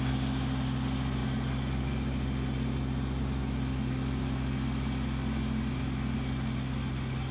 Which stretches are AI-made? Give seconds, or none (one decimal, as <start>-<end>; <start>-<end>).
none